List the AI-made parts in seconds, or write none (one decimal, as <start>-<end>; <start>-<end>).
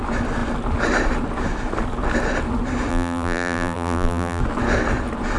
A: 2.9-4.4